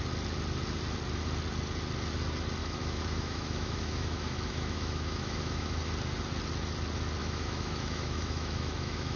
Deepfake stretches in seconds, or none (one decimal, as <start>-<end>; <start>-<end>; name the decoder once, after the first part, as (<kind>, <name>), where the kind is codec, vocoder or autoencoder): 2.6-5.8 (autoencoder, DAC-VAE); 7.2-9.2